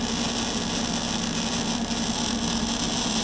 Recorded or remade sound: recorded